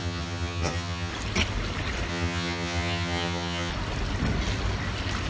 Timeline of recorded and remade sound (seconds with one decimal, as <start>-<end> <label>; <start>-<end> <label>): 0.0-1.1 remade; 1.1-2.1 recorded; 2.1-3.7 remade; 3.7-5.3 recorded